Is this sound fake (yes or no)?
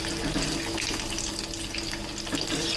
no